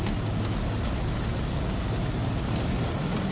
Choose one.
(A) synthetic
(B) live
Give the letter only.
B